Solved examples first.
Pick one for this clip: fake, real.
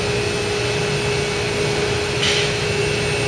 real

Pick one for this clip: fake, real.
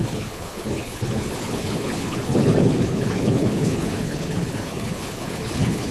fake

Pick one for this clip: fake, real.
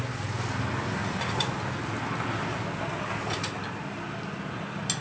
real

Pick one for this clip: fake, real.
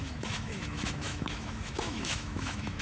fake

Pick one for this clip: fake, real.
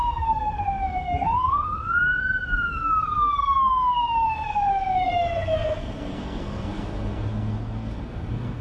fake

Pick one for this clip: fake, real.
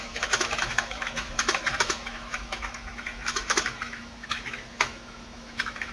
fake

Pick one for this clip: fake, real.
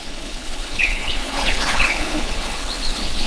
fake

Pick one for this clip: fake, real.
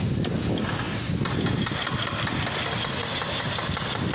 real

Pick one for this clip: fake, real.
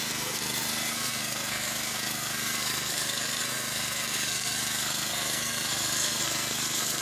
fake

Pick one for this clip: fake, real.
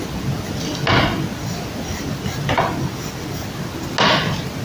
real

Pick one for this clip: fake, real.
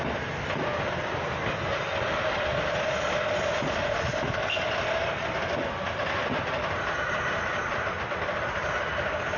real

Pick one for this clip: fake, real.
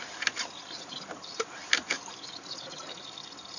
real